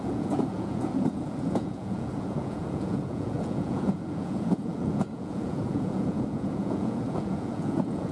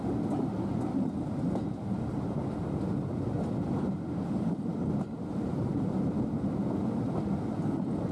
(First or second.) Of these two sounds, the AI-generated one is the first